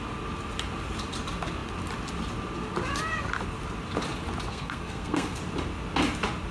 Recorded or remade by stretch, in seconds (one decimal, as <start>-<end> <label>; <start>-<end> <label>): 0.0-4.5 recorded; 4.5-5.4 remade; 5.4-6.5 recorded